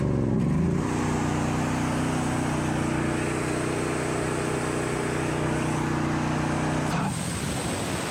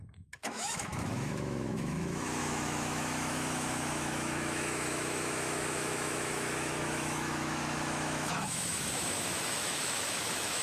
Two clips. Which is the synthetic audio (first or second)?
second